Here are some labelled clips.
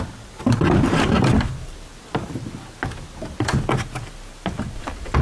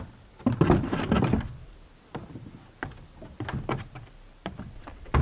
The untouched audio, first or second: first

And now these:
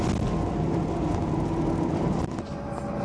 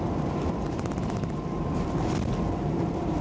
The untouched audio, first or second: first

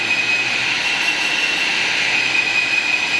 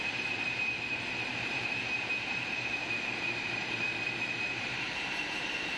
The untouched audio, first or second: first